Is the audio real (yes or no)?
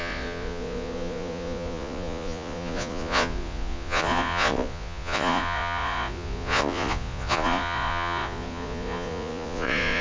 no